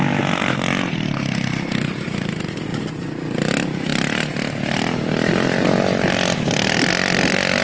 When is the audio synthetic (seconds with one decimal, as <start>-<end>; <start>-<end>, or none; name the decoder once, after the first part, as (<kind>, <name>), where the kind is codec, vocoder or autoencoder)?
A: none